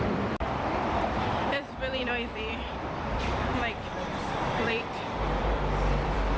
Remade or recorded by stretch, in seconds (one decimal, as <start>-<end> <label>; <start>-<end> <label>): 0.0-3.5 remade; 3.5-4.2 recorded; 4.2-6.4 remade